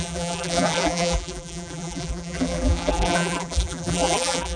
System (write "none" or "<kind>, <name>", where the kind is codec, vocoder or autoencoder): vocoder, BigVGAN v2